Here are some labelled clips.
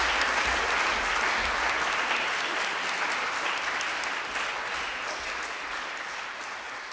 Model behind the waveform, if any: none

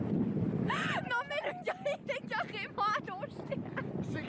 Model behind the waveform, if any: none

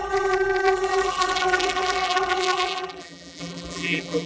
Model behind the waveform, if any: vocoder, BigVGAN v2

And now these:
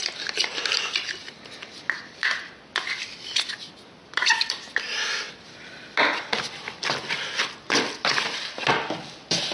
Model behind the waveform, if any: none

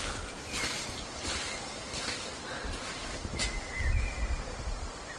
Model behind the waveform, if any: none